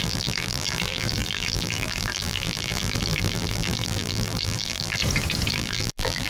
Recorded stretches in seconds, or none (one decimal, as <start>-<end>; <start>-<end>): 5.0-5.5